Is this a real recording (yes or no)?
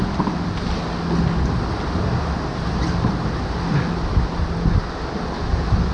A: yes